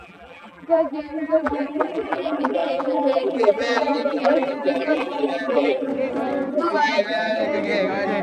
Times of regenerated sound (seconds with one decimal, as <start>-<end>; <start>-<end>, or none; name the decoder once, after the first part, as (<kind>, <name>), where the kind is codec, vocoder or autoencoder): 0.0-5.9 (vocoder, BigVGAN v2); 6.5-7.4